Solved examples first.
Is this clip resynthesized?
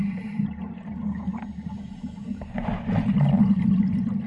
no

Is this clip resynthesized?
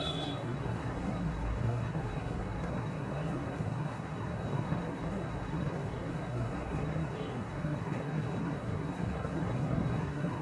yes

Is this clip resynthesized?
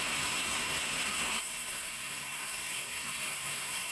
yes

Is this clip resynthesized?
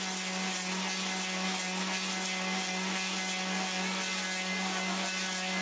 no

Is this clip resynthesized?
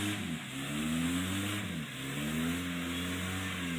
no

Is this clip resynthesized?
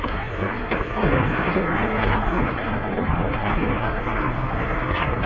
yes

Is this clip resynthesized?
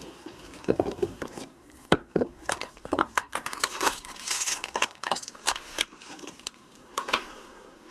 yes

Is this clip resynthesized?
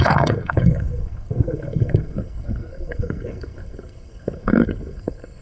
yes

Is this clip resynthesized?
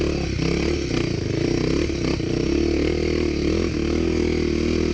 no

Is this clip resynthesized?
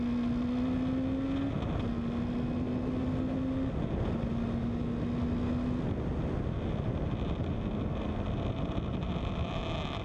no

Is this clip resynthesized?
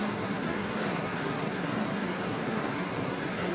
yes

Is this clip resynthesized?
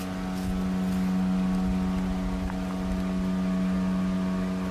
no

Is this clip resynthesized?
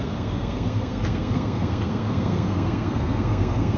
yes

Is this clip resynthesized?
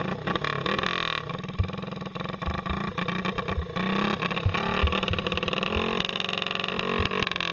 no